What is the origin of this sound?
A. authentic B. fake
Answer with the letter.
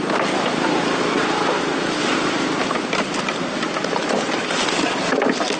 A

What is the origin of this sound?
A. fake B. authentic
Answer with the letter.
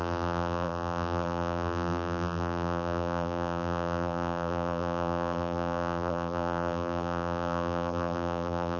A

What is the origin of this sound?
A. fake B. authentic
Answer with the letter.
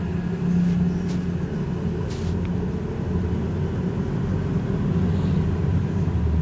B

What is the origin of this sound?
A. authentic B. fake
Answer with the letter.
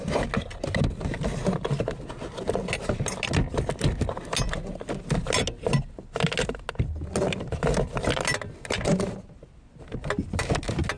A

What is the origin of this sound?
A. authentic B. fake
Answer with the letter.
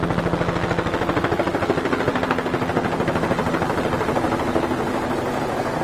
A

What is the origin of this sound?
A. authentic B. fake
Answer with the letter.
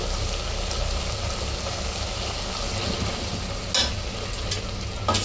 A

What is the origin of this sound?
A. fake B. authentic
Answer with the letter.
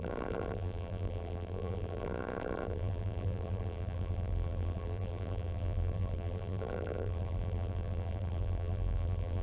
A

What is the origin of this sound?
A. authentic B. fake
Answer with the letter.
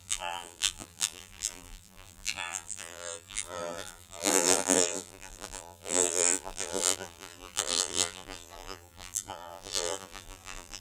B